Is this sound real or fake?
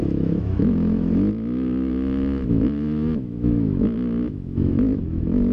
fake